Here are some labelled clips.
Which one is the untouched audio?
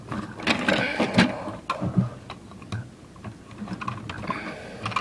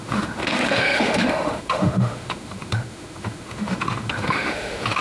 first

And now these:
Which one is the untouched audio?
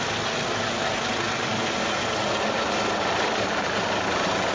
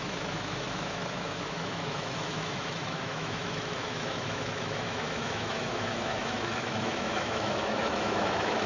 first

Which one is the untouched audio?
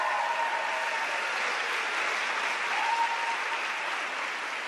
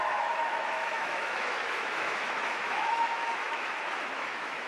first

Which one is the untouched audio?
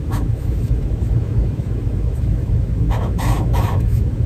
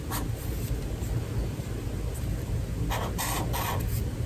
second